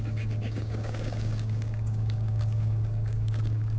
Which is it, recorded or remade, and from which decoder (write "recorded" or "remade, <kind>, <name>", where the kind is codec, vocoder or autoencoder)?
remade, codec, DAC